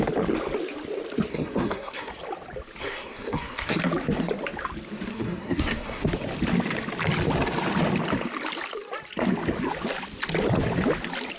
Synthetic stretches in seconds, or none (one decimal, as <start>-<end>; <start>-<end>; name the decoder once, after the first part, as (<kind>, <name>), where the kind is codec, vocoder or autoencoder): 1.3-2.1 (codec, SNAC); 2.8-3.8; 5.1-6.2